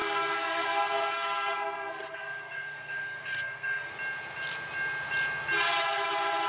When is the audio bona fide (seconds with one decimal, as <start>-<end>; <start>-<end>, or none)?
3.9-6.5